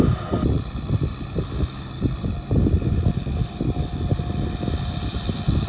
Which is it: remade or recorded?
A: recorded